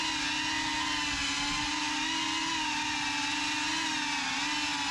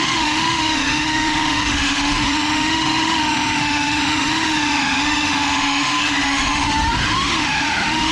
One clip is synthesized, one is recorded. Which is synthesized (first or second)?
second